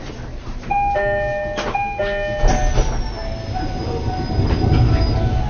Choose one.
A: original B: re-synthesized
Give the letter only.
A